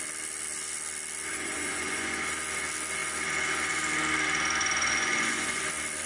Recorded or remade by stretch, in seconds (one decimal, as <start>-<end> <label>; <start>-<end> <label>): 0.0-1.3 recorded; 1.3-2.2 remade; 2.2-4.6 recorded; 4.6-5.6 remade; 5.6-6.1 recorded